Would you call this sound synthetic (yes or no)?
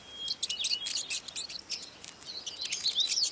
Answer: no